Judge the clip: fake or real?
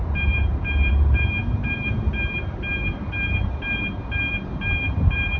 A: fake